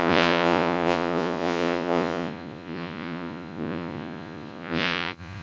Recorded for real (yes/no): no